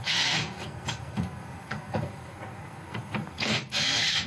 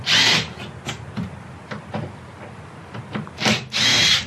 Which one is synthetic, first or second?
first